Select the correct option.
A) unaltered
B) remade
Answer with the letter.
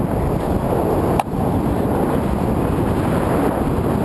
A